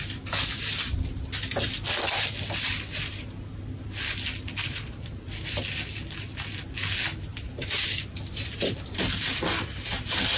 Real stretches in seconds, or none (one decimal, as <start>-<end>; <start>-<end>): 0.0-4.4; 5.2-7.3; 10.0-10.4